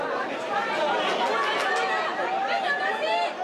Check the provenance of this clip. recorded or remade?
recorded